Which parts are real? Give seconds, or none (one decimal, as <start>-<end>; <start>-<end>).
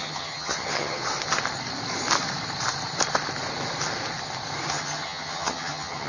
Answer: 1.0-4.7